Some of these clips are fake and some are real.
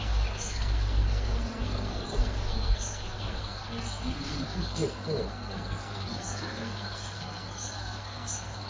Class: fake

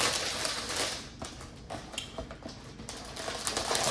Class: real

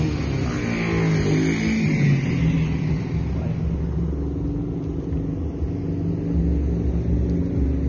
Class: real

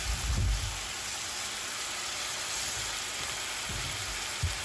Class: real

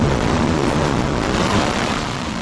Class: fake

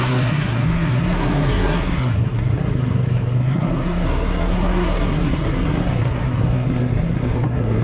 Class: fake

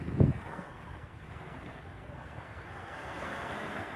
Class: fake